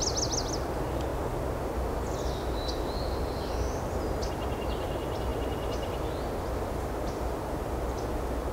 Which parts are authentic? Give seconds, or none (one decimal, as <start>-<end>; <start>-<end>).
0.0-8.5

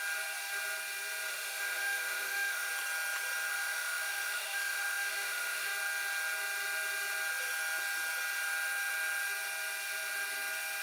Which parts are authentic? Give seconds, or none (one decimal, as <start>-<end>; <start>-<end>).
0.0-1.3; 2.7-3.5; 5.7-10.8

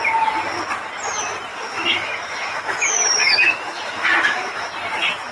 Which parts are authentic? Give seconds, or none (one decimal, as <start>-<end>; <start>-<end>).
0.0-1.5; 4.7-5.3

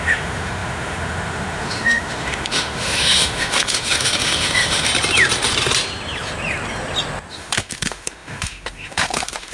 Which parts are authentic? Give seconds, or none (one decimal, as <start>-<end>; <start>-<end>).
4.9-7.3

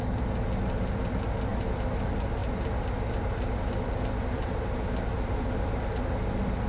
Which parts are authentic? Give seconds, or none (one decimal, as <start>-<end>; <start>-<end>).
0.0-6.7

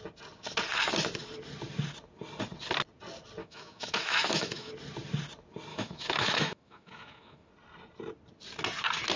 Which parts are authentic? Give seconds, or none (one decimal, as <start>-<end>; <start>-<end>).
0.0-3.4; 4.7-5.7; 7.5-9.2

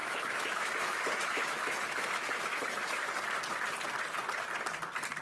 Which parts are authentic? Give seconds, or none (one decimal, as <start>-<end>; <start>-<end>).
3.1-5.2